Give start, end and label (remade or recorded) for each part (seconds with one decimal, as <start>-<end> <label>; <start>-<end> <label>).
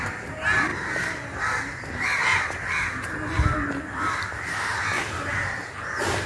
0.0-6.3 recorded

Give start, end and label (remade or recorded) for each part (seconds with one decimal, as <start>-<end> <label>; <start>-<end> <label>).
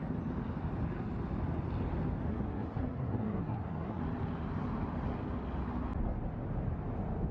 0.0-2.3 recorded; 2.3-4.0 remade; 4.0-7.3 recorded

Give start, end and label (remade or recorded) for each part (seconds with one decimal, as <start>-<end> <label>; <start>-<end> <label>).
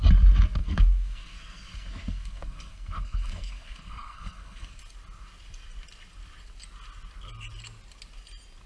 0.0-0.6 recorded; 0.6-4.8 remade; 4.8-8.7 recorded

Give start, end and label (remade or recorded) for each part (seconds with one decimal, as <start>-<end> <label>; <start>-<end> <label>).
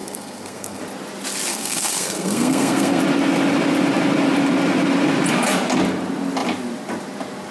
0.0-0.8 remade; 0.8-1.5 recorded; 1.5-3.0 remade; 3.0-7.5 recorded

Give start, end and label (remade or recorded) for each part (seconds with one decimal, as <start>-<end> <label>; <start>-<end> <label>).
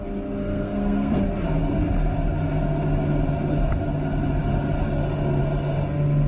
0.0-0.4 recorded; 0.4-1.2 remade; 1.2-6.3 recorded